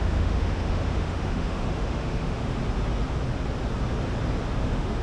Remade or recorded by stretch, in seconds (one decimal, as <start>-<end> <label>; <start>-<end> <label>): 0.0-2.6 remade; 2.6-4.5 recorded; 4.5-5.0 remade